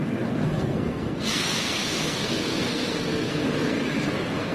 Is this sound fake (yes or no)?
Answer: yes